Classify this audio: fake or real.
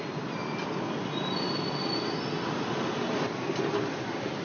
real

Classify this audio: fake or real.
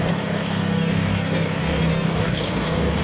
fake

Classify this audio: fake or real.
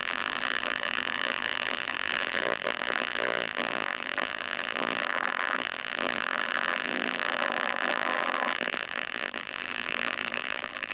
fake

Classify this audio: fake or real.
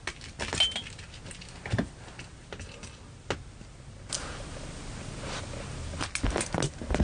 real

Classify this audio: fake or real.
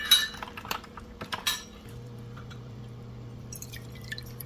fake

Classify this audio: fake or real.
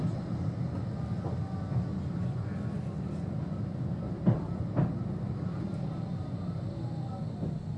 real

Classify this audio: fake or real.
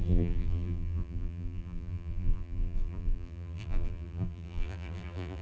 fake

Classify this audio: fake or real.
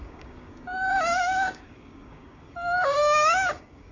fake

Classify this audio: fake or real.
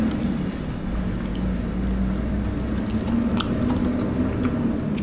real